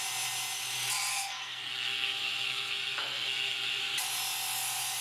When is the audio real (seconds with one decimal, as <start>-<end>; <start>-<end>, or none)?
0.0-1.1; 3.8-5.0